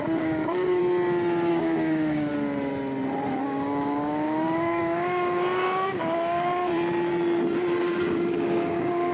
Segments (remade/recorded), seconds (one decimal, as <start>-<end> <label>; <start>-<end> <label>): 0.0-0.8 remade; 0.8-1.5 recorded; 1.5-2.3 remade; 2.3-3.4 recorded; 3.4-6.7 remade; 6.7-7.8 recorded; 7.8-9.1 remade